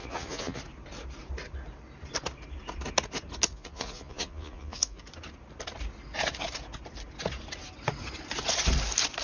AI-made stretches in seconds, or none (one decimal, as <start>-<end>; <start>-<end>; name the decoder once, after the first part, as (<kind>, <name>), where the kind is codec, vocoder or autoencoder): 0.0-0.6 (vocoder, Vocos); 3.5-5.0